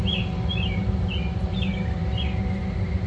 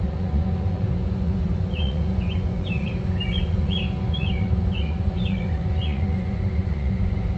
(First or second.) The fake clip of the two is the second